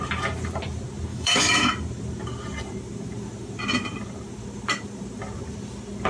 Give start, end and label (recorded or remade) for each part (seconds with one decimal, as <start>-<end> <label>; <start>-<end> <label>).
0.0-1.1 recorded; 1.1-1.7 remade; 1.7-6.1 recorded